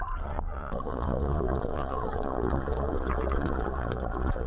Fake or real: fake